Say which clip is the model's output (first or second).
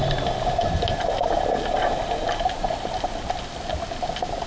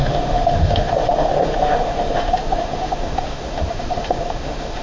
second